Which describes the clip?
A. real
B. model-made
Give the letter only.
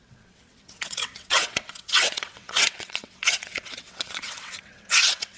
B